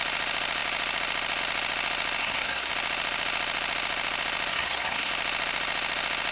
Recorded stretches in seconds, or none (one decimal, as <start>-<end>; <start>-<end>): 0.0-2.2; 2.7-4.5; 5.1-6.3